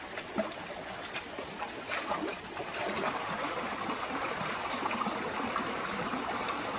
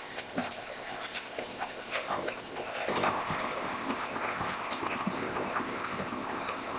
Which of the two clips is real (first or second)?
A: first